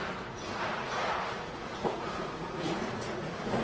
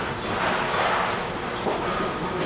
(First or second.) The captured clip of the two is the second